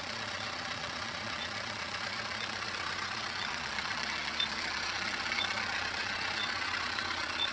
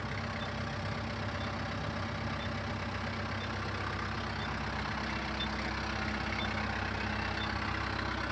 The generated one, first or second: first